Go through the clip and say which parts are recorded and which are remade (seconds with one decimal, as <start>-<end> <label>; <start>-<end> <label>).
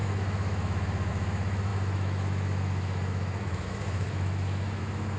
0.0-5.2 remade